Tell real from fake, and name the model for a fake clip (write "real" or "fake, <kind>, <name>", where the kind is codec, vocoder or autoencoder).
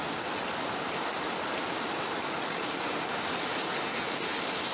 real